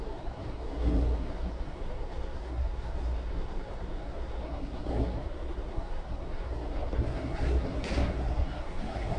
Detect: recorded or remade remade